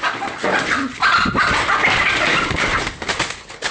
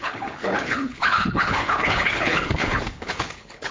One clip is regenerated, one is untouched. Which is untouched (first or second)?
first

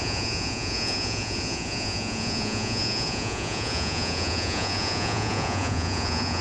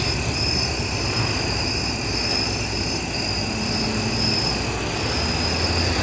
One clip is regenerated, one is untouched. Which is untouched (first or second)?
second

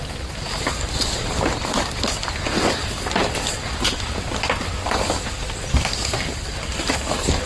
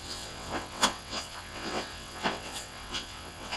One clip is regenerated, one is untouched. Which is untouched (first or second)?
first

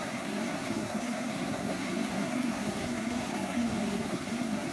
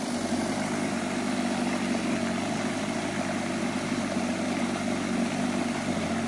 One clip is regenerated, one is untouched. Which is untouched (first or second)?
second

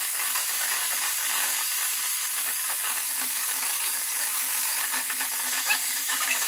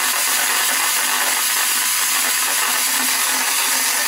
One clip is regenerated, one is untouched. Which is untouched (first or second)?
second